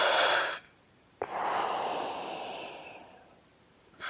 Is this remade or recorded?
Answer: remade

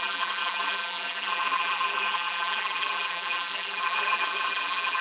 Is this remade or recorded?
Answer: remade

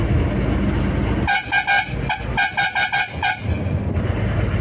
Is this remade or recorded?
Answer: recorded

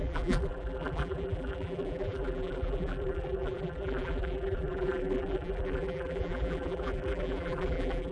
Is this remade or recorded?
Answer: remade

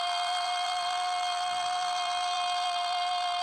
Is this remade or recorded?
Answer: remade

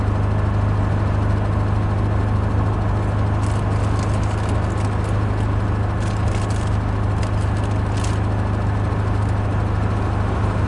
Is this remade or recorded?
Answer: recorded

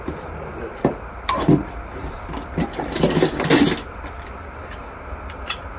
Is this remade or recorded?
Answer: remade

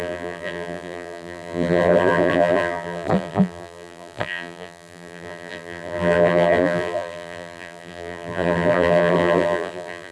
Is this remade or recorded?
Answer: remade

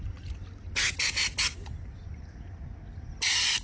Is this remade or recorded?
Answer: recorded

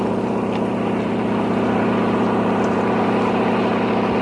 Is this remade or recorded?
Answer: recorded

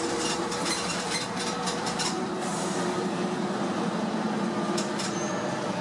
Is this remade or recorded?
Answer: remade